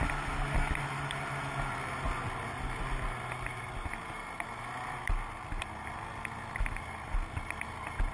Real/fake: real